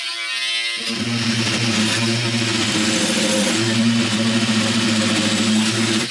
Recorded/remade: recorded